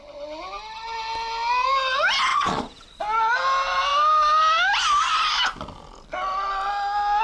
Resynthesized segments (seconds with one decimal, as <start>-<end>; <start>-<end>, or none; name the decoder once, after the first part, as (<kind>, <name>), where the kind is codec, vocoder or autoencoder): 2.3-3.0 (vocoder, Vocos)